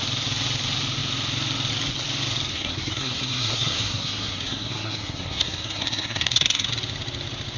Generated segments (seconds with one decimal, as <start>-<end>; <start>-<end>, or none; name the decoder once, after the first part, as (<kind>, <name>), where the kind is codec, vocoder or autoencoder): 2.5-6.7 (codec, SNAC)

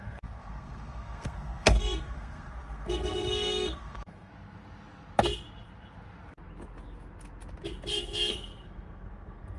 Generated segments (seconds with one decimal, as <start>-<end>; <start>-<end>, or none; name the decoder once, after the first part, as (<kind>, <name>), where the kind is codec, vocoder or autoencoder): 0.0-4.3 (codec, SNAC); 7.9-9.6

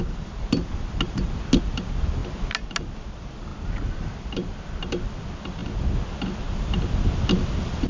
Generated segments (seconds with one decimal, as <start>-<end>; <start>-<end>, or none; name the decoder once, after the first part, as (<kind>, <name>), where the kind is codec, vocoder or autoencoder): none